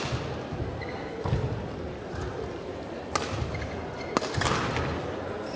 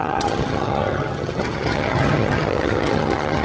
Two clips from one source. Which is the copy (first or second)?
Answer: second